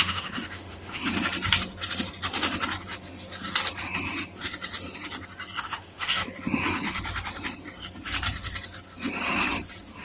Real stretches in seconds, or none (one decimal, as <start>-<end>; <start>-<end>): 1.0-5.6; 6.2-10.0